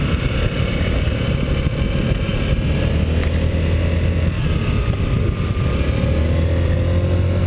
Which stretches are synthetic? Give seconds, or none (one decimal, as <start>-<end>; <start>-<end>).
none